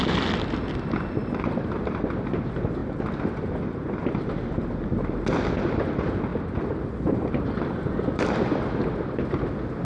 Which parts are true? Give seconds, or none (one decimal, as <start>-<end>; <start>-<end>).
0.0-6.3; 9.4-9.8